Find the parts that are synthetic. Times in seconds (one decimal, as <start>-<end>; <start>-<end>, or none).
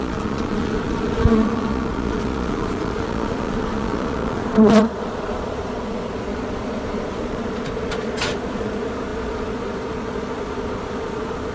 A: 0.0-11.5